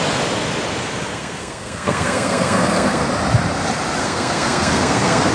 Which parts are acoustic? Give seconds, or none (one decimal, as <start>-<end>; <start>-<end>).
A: 0.0-1.1; 3.1-4.0